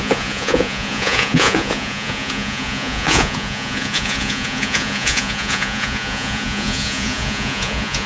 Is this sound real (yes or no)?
no